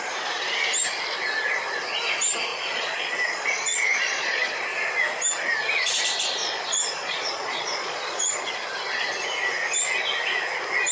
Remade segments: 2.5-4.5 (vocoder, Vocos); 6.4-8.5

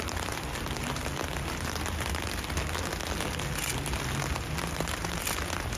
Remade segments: none